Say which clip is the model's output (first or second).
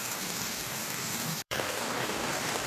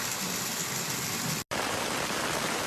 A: first